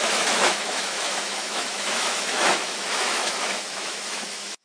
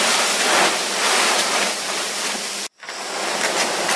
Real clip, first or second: second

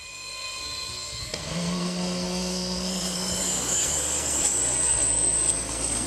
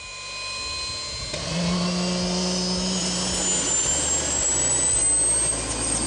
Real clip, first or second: second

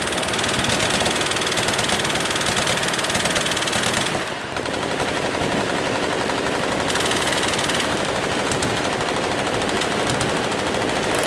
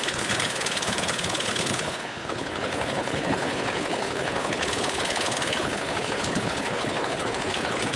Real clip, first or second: first